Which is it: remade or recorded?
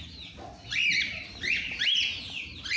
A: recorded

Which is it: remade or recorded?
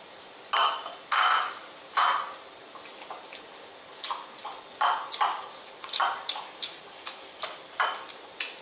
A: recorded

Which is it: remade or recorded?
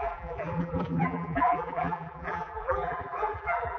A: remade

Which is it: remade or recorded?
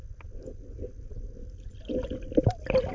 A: recorded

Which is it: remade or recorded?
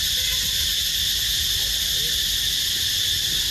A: recorded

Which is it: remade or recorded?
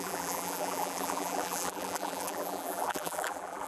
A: remade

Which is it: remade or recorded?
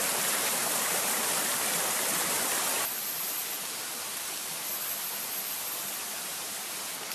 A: remade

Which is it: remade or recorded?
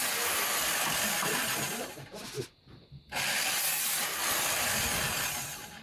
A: recorded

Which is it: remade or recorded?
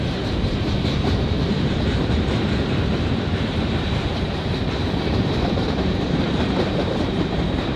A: remade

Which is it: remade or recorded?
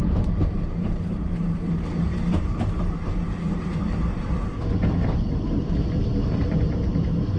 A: remade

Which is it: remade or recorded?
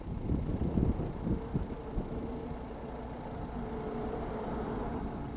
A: remade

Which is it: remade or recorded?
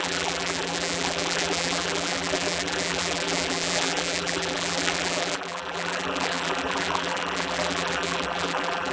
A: remade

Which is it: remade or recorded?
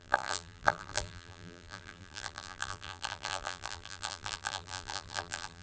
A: remade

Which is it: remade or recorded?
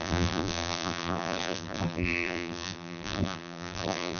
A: remade